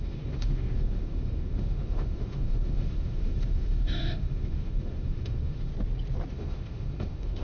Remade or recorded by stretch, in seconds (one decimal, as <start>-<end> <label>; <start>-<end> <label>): 0.0-5.7 remade; 5.7-6.3 recorded; 6.3-7.4 remade